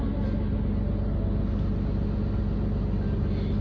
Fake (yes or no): no